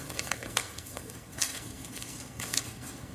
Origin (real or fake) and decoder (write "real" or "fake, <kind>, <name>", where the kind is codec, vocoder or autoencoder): fake, codec, SNAC